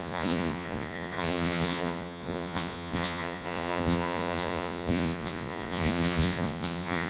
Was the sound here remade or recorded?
remade